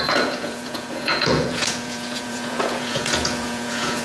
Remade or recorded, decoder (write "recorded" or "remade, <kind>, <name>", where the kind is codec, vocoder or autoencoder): remade, vocoder, Vocos